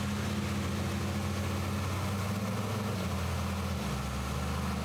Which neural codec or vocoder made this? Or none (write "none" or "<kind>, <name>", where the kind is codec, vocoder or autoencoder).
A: none